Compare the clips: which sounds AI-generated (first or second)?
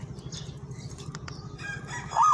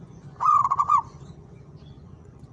second